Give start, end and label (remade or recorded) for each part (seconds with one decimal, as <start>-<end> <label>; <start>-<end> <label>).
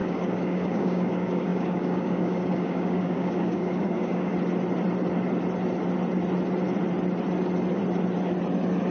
0.0-4.3 remade; 4.3-8.9 recorded